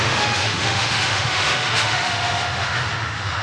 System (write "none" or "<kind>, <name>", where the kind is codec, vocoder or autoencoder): autoencoder, DAC-VAE